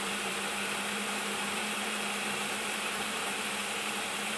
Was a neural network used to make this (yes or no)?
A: yes